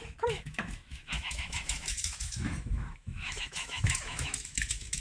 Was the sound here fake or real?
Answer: fake